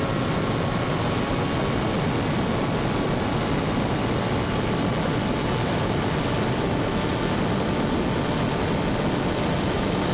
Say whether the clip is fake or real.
real